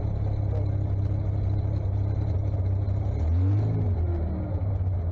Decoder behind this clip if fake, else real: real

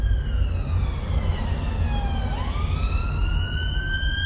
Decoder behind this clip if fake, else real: real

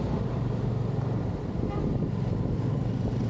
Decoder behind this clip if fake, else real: real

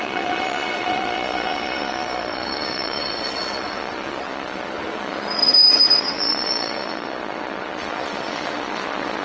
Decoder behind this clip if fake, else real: fake, vocoder, Vocos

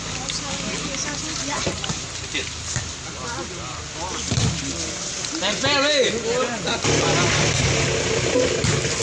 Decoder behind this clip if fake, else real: real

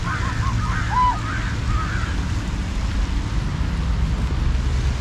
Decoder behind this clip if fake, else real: real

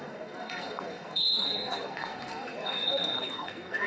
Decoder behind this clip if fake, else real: fake, codec, SNAC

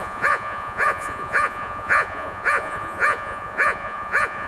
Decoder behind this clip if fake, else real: fake, vocoder, Vocos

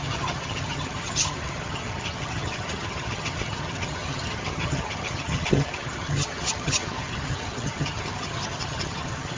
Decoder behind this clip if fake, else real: fake, vocoder, HiFi-GAN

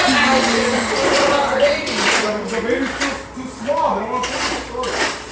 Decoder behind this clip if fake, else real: real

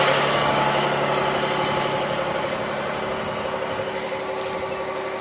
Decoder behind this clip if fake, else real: real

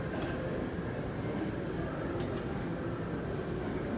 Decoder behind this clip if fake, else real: real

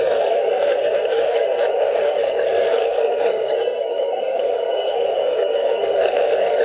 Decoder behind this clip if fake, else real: fake, codec, SNAC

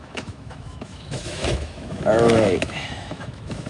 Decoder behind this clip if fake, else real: fake, autoencoder, DAC-VAE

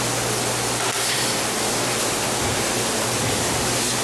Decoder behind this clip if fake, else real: real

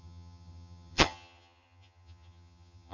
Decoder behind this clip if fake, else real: fake, vocoder, HiFi-GAN